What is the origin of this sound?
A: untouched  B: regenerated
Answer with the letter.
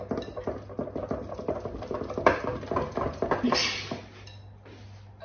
A